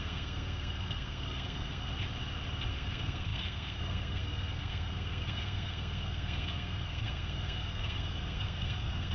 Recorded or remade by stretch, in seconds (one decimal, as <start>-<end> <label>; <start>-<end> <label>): 0.0-1.9 remade; 1.9-2.7 recorded; 2.7-9.1 remade